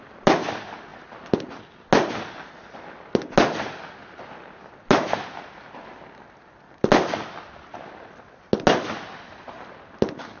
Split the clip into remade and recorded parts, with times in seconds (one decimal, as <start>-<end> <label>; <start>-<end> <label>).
0.0-10.4 recorded